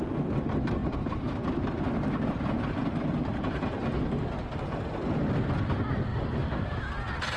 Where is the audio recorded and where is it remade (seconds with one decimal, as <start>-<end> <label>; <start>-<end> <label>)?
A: 0.0-3.3 recorded; 3.3-4.0 remade; 4.0-6.1 recorded; 6.1-6.8 remade; 6.8-7.4 recorded